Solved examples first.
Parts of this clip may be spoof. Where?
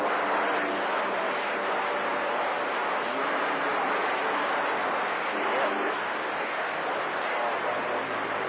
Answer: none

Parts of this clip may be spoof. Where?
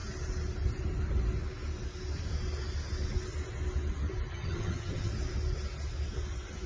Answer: 4.3-5.1 (vocoder, HiFi-GAN)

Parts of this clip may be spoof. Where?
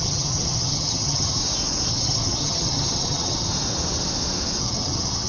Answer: 0.0-1.4 (vocoder, HiFi-GAN); 1.9-3.5; 4.6-5.3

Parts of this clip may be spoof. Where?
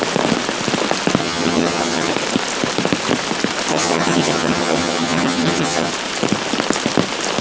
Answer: 1.2-2.1 (vocoder, HiFi-GAN); 3.7-5.9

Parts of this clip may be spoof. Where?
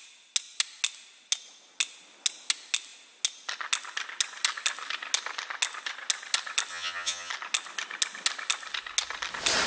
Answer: 6.7-7.3 (vocoder, HiFi-GAN)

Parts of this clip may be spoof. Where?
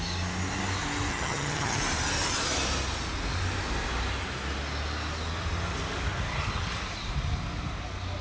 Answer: 1.1-1.8 (vocoder, HiFi-GAN)